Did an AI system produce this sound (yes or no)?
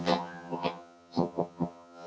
yes